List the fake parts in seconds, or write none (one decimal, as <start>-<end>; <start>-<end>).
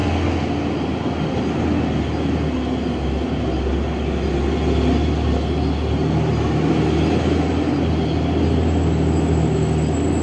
none